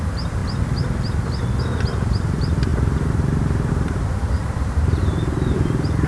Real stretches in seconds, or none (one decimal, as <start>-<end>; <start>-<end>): 0.4-1.6; 2.7-3.7